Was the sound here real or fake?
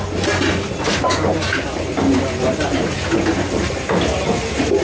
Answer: real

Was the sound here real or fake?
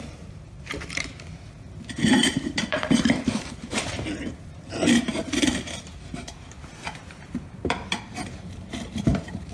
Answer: fake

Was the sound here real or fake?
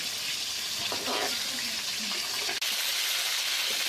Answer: real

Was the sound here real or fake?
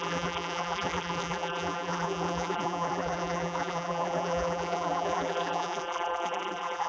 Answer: fake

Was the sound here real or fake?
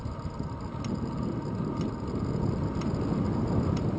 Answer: real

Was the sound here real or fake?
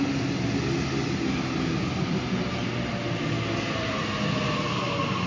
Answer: real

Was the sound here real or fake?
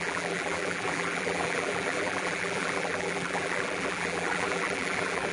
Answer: fake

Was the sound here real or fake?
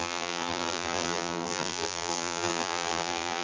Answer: fake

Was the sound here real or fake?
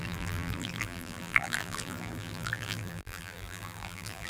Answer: fake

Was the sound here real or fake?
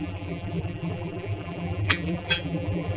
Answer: fake